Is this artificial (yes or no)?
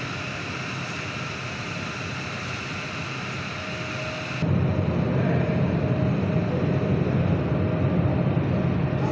no